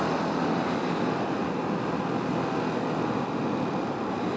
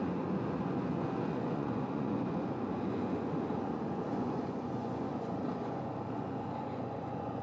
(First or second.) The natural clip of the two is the first